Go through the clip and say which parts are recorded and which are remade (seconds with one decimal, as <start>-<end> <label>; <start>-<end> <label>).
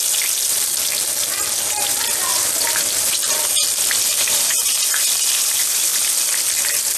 0.0-2.3 recorded; 2.3-4.5 remade; 4.5-7.0 recorded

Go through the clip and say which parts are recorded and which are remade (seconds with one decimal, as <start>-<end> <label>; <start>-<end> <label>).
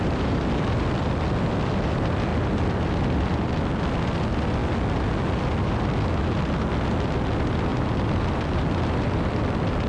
0.0-2.3 recorded; 2.3-3.6 remade; 3.6-7.7 recorded; 7.7-9.4 remade; 9.4-9.9 recorded